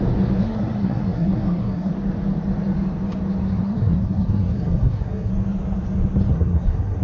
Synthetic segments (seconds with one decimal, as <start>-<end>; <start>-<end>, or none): 0.4-1.9; 3.6-5.3; 6.3-7.0